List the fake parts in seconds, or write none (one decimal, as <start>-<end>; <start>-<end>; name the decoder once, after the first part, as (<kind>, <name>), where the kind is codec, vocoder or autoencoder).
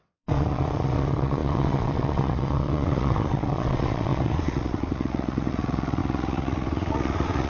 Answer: 0.0-7.5 (vocoder, WaveNeXt)